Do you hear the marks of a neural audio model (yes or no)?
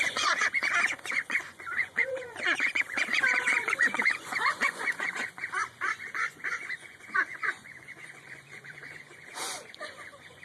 yes